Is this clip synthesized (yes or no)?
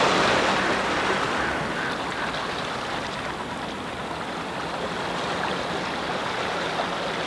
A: no